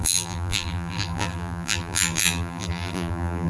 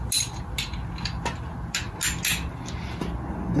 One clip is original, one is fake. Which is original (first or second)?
second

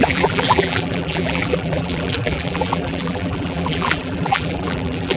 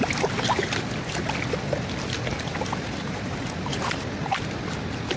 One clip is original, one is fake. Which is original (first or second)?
second